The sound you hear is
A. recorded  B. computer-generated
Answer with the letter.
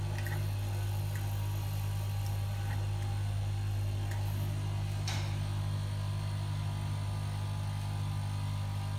A